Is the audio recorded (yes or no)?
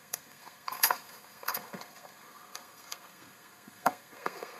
no